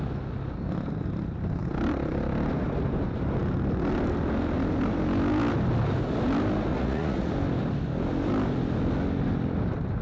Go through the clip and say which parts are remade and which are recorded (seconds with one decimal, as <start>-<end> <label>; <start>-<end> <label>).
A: 0.0-6.7 recorded; 6.7-7.3 remade; 7.3-10.0 recorded